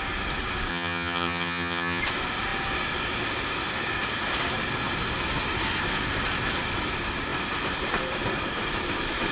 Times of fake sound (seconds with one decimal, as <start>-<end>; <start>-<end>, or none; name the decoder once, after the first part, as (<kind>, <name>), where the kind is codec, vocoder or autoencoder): 0.7-2.0 (vocoder, HiFi-GAN)